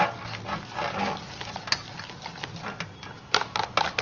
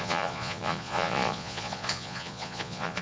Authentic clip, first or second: first